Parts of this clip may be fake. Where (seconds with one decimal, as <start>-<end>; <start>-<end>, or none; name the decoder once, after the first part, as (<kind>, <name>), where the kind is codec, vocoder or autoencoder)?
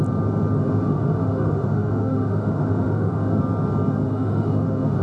0.6-3.4 (autoencoder, DAC-VAE); 3.9-5.0